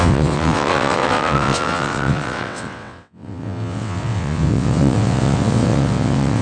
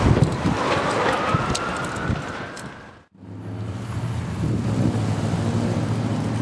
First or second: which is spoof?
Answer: first